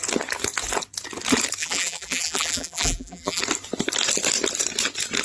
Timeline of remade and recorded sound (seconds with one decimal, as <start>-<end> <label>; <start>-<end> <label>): 0.0-1.6 recorded; 1.6-3.4 remade; 3.4-5.2 recorded